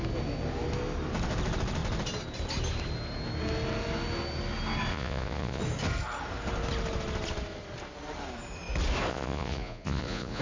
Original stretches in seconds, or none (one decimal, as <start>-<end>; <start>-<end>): 0.0-4.9; 5.6-9.1